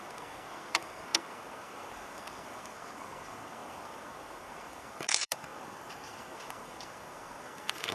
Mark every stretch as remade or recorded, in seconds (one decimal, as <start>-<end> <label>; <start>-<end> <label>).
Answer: 0.0-7.9 remade